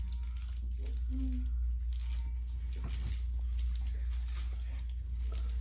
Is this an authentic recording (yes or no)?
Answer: yes